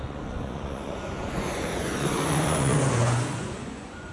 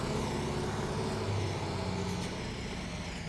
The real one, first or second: second